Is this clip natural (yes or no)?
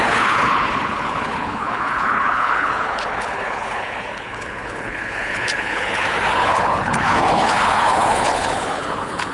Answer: no